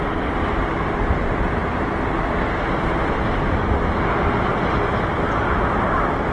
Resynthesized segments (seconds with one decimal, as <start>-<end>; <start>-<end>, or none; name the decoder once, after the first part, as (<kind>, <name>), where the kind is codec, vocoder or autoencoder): none